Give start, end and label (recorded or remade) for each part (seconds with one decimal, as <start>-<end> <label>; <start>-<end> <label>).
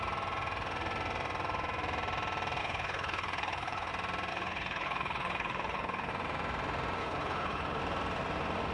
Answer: 0.0-2.6 recorded; 2.6-3.9 remade; 3.9-4.3 recorded; 4.3-6.1 remade; 6.1-7.0 recorded; 7.0-7.8 remade; 7.8-8.7 recorded